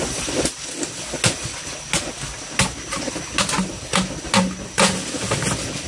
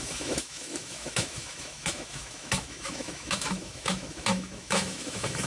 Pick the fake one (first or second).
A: second